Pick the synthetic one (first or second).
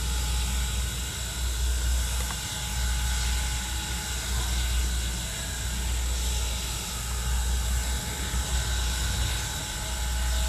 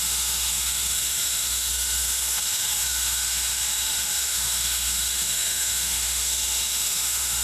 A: second